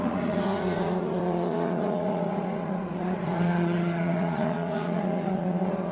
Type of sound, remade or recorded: remade